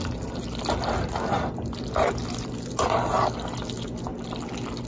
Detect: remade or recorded recorded